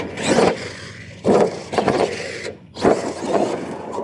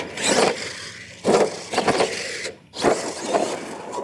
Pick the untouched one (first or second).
second